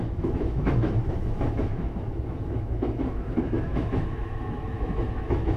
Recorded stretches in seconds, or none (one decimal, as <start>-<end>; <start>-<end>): none